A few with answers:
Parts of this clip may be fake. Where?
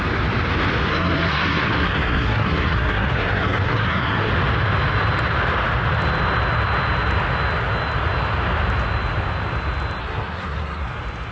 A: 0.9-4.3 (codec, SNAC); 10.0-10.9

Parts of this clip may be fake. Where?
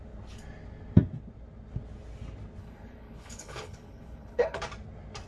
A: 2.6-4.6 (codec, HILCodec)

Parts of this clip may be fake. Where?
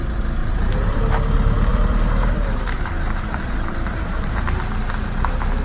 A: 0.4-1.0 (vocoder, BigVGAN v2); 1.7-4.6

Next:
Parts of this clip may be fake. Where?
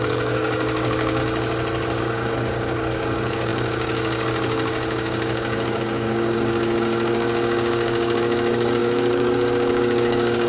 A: 0.0-1.2 (codec, DAC); 2.0-10.5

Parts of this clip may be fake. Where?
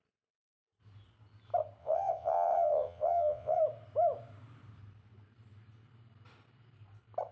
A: 1.8-3.6 (vocoder, WaveNeXt)